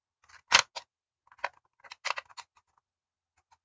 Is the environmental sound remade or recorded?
recorded